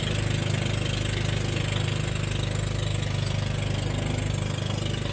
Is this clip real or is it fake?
real